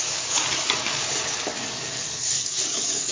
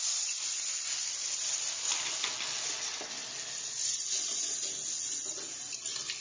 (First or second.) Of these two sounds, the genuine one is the second